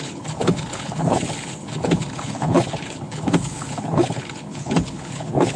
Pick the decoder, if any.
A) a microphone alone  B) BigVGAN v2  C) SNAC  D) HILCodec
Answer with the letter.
D